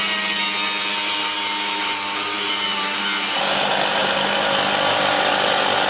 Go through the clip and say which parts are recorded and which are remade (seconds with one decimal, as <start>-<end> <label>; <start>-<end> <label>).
0.0-5.9 recorded